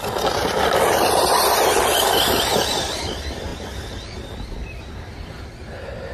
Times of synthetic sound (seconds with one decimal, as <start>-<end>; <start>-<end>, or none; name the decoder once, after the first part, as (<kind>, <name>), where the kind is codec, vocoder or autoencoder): none